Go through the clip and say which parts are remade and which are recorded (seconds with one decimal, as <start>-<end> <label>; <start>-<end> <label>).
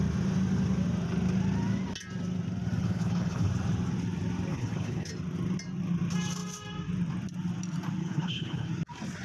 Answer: 0.0-2.8 recorded; 2.8-3.5 remade; 3.5-4.5 recorded; 4.5-5.1 remade; 5.1-8.0 recorded; 8.0-8.7 remade; 8.7-9.2 recorded